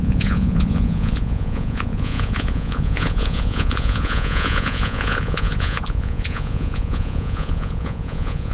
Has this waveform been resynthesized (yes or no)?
yes